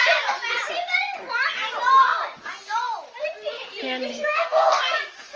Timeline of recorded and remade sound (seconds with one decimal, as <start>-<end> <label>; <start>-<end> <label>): 0.0-4.1 recorded; 4.1-4.8 remade; 4.8-5.4 recorded